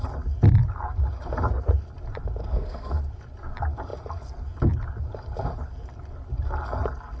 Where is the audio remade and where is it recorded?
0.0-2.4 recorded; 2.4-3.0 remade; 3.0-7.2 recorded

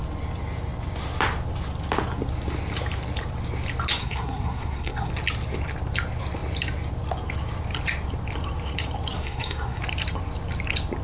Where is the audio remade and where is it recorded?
0.0-4.0 recorded; 4.0-5.1 remade; 5.1-9.1 recorded; 9.1-9.8 remade; 9.8-11.0 recorded

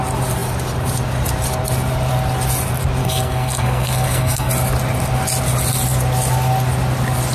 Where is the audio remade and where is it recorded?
0.0-3.0 recorded; 3.0-4.5 remade; 4.5-7.3 recorded